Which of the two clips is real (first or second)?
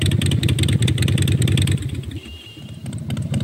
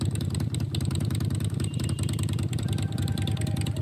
first